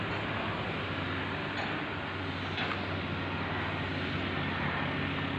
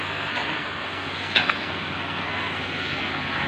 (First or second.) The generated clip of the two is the second